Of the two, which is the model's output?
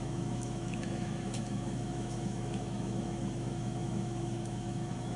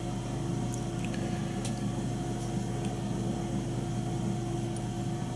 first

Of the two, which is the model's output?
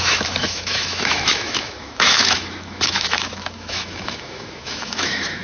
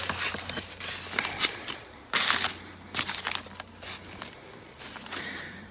first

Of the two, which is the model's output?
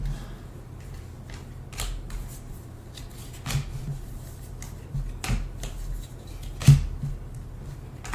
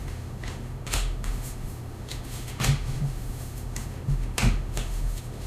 second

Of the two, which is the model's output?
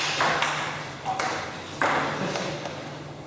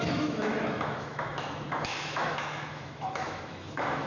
second